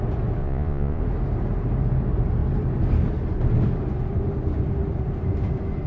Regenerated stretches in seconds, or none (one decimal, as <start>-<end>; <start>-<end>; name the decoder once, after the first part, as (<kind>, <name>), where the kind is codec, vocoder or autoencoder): 0.4-1.0 (vocoder, Vocos)